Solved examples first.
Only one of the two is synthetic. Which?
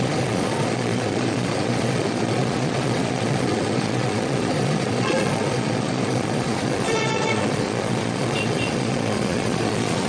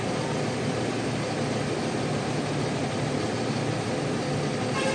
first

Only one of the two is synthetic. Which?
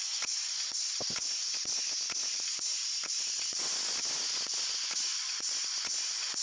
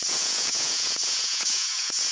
second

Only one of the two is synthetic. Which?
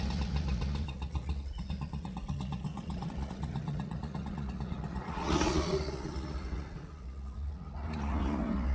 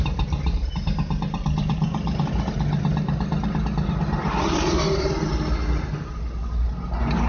first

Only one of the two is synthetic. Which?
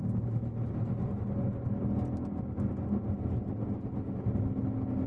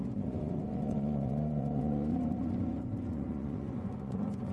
second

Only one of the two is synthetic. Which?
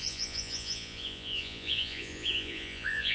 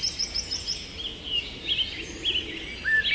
first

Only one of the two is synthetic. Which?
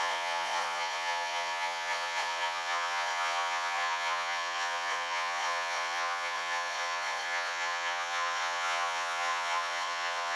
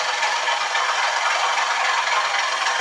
first